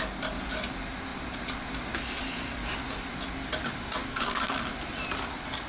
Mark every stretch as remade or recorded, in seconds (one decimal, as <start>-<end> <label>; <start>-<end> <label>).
0.0-4.0 recorded; 4.0-4.7 remade; 4.7-5.7 recorded